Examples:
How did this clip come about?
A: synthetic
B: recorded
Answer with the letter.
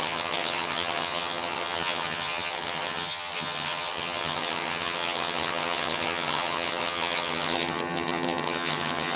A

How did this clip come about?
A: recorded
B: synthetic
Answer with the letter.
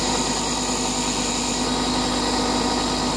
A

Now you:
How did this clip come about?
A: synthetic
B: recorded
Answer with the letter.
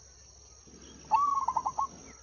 B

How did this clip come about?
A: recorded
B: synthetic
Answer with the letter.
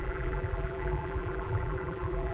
B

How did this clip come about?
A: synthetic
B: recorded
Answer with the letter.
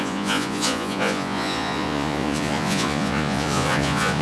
A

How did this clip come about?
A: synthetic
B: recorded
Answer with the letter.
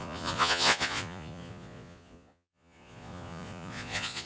A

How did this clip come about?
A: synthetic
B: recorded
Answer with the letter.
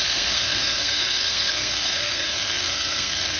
A